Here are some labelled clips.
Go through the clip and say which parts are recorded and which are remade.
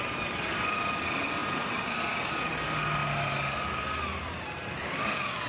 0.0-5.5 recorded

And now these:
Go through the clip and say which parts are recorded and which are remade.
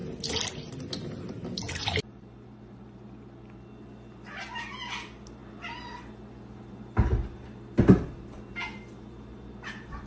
0.0-10.1 recorded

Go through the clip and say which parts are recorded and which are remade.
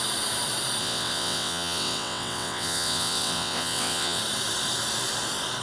0.0-0.8 recorded; 0.8-4.2 remade; 4.2-5.6 recorded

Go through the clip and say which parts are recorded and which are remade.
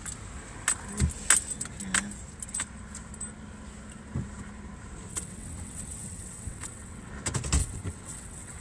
0.0-5.1 recorded; 5.1-7.1 remade; 7.1-7.6 recorded; 7.6-8.6 remade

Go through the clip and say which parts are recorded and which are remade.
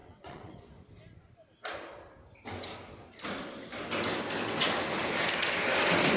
0.0-0.5 remade; 0.5-6.2 recorded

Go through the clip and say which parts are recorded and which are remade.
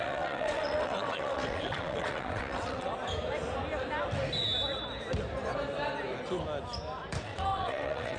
0.0-2.9 remade; 2.9-7.2 recorded; 7.2-8.2 remade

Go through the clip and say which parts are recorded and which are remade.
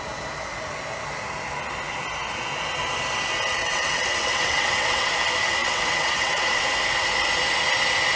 0.0-3.6 recorded; 3.6-5.1 remade; 5.1-5.6 recorded; 5.6-6.6 remade; 6.6-8.2 recorded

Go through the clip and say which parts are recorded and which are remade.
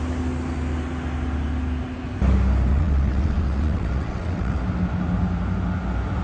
0.0-2.7 recorded; 2.7-4.6 remade; 4.6-6.2 recorded